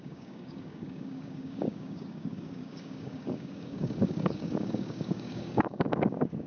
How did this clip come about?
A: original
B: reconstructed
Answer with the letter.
B